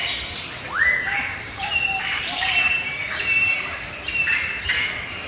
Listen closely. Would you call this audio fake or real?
fake